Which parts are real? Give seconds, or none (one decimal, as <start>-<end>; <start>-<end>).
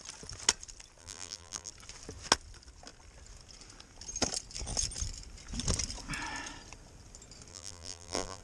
0.0-1.0; 1.7-7.5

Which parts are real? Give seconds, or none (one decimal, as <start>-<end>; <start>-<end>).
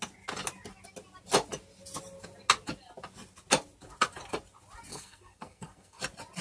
0.0-4.9; 6.0-6.4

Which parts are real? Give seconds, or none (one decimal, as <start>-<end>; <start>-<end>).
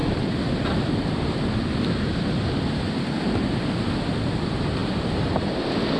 0.0-6.0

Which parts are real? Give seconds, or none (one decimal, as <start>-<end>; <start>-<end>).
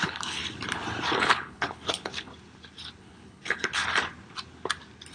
0.4-1.2; 2.3-3.0; 3.8-5.1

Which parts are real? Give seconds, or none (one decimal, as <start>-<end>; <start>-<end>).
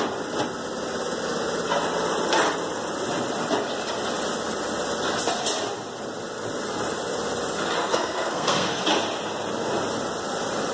0.0-7.8; 8.8-10.7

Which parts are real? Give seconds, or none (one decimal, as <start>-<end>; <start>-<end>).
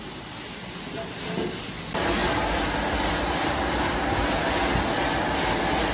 0.0-5.9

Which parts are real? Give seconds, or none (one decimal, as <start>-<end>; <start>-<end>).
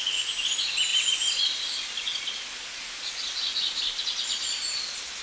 0.0-5.2